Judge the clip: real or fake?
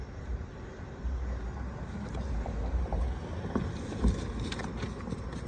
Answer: real